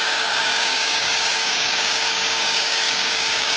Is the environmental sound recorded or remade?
remade